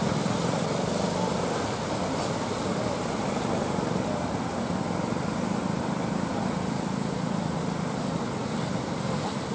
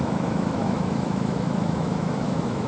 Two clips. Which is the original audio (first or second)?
first